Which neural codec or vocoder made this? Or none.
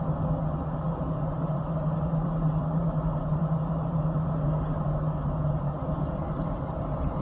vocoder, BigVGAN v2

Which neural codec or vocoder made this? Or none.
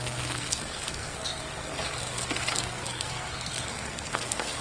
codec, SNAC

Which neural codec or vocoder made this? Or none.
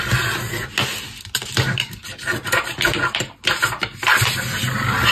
none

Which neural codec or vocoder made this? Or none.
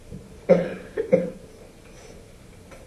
vocoder, BigVGAN v2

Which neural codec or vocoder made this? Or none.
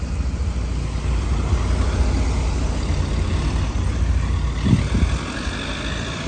none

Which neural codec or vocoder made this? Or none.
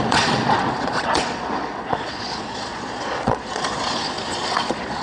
vocoder, Vocos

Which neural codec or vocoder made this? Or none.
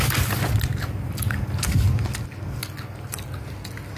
none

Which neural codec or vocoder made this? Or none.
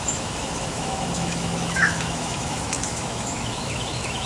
autoencoder, DAC-VAE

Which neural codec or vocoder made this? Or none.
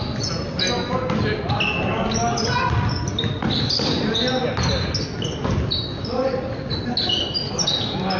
none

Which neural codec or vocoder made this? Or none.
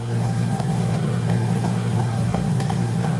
codec, SNAC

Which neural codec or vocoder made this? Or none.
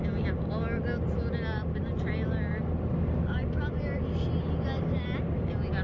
none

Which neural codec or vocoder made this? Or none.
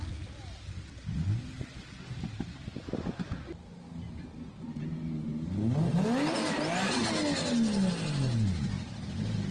none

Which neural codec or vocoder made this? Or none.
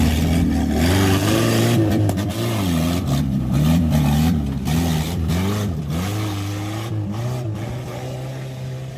none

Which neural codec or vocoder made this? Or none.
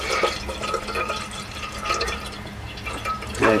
vocoder, BigVGAN v2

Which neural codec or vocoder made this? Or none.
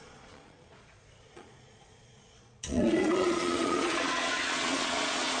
vocoder, Vocos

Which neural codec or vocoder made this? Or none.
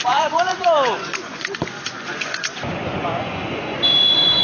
vocoder, Vocos